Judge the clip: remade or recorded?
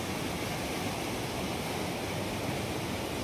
recorded